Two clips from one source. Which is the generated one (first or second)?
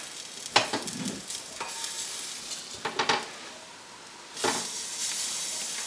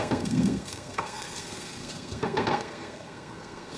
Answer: second